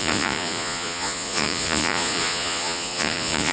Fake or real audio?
fake